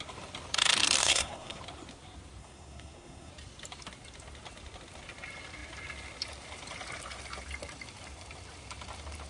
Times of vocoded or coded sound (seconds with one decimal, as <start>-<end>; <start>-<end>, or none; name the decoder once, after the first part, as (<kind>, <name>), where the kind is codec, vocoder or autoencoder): 1.0-1.6 (codec, SNAC); 2.4-3.3